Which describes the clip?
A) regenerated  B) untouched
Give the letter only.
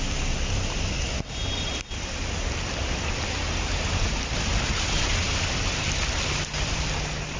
B